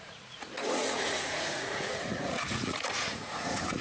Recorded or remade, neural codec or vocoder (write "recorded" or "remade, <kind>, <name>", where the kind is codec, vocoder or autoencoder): remade, vocoder, Vocos